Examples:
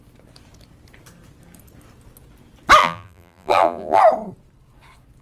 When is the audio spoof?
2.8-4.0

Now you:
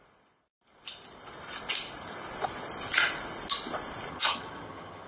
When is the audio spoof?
4.1-5.1